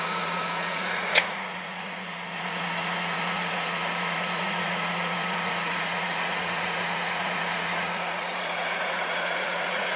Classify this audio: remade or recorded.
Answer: remade